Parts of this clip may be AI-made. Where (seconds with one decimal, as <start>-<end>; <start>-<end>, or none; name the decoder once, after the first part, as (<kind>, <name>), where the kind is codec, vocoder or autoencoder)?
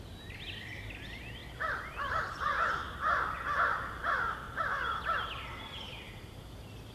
1.4-2.2 (vocoder, BigVGAN v2)